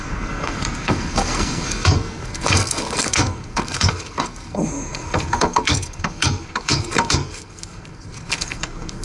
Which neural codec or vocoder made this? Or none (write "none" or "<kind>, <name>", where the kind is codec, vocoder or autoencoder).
codec, SNAC